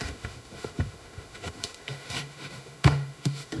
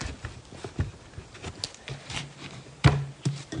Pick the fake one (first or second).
first